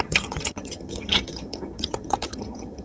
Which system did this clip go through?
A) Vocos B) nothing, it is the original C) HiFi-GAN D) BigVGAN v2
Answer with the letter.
C